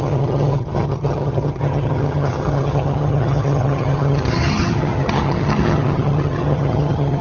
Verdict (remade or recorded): remade